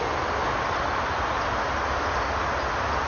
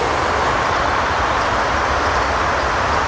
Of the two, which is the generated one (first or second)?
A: second